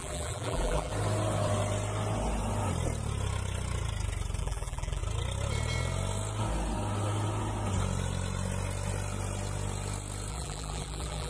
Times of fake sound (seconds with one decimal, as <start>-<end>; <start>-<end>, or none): 0.0-0.9; 4.4-5.0; 10.3-11.3